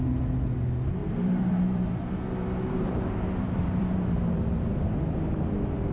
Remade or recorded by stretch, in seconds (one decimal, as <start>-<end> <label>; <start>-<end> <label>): 0.0-1.0 recorded; 1.0-4.3 remade; 4.3-5.9 recorded